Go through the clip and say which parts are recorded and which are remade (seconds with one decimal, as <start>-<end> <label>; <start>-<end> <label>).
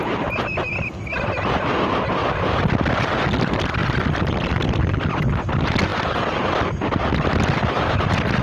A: 0.0-2.2 recorded; 2.2-3.0 remade; 3.0-8.4 recorded